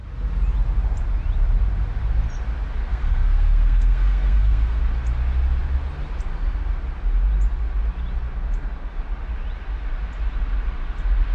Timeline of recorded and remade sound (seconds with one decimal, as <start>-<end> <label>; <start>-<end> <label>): 0.0-2.9 recorded; 2.9-4.8 remade; 4.8-11.3 recorded